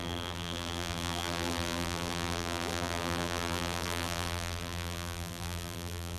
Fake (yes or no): yes